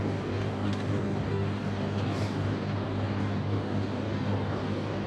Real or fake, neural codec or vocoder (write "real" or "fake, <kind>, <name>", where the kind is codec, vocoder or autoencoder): fake, codec, DAC